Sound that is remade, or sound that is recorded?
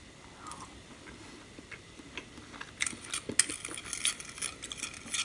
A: recorded